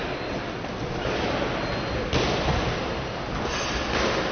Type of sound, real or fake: real